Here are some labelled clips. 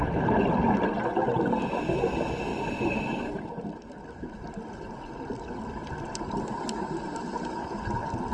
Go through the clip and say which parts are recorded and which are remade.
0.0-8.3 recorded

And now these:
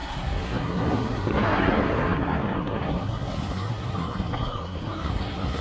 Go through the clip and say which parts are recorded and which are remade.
0.0-5.6 remade

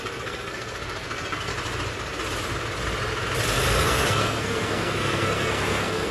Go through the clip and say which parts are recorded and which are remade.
0.0-1.5 remade; 1.5-3.8 recorded; 3.8-6.1 remade

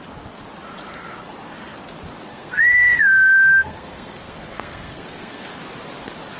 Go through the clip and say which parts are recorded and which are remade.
0.0-2.3 recorded; 2.3-5.5 remade; 5.5-6.4 recorded

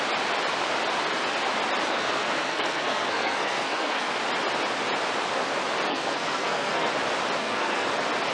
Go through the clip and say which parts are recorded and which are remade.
0.0-1.9 recorded; 1.9-4.1 remade; 4.1-5.9 recorded; 5.9-6.9 remade; 6.9-7.4 recorded; 7.4-7.9 remade; 7.9-8.3 recorded

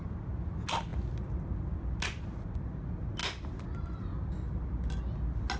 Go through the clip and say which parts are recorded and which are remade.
0.0-5.6 recorded